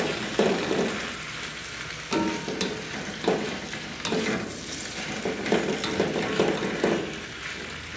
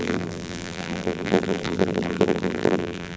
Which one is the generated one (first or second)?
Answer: second